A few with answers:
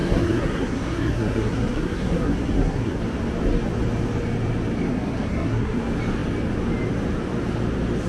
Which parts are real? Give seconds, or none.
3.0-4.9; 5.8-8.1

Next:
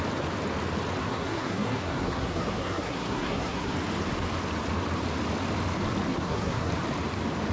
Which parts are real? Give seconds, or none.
0.0-1.0; 3.7-6.1; 6.7-7.5

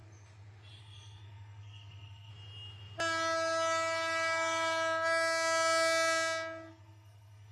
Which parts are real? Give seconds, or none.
0.0-0.8; 2.3-6.7

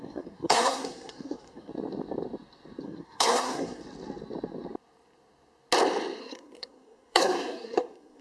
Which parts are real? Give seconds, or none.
1.7-2.8; 3.8-6.2

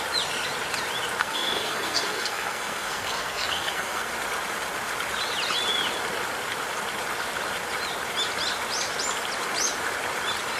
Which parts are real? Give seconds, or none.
0.0-1.2; 4.1-10.6

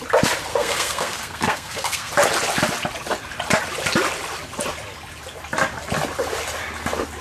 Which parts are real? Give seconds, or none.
0.0-0.5; 2.1-7.2